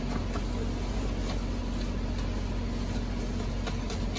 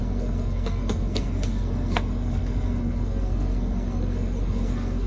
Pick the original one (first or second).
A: first